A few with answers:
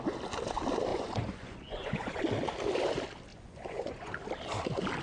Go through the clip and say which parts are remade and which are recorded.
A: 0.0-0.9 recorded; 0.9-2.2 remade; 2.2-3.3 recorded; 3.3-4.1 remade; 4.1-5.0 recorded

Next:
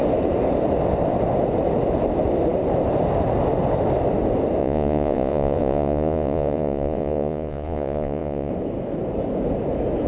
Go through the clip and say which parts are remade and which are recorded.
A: 0.0-4.6 recorded; 4.6-8.5 remade; 8.5-10.1 recorded

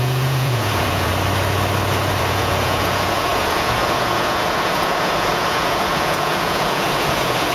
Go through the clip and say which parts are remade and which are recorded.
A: 0.0-1.1 remade; 1.1-2.2 recorded; 2.2-7.5 remade

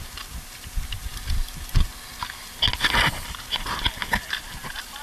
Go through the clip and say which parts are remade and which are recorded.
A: 0.0-5.0 recorded